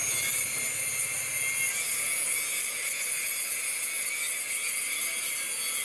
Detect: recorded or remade recorded